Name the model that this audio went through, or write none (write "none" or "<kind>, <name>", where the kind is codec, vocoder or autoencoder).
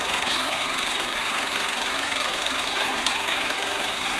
codec, SNAC